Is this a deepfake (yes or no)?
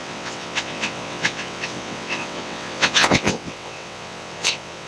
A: yes